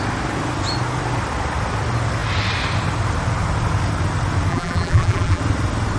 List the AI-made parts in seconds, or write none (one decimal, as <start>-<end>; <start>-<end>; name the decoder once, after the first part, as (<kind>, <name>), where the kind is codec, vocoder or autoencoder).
4.5-5.4 (vocoder, BigVGAN v2)